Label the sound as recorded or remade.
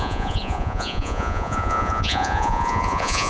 remade